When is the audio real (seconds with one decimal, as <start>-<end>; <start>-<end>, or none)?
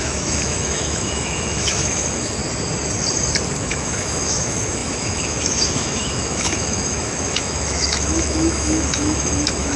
2.4-3.6